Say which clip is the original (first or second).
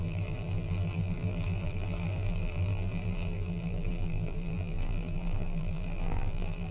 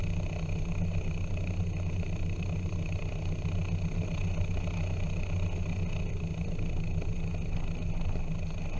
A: second